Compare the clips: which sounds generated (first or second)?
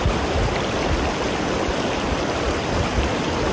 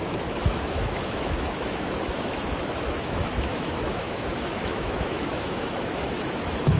second